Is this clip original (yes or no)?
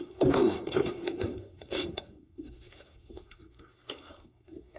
no